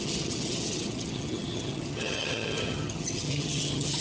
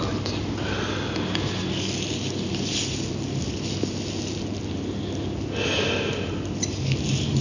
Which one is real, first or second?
second